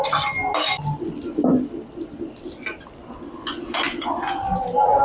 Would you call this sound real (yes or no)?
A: yes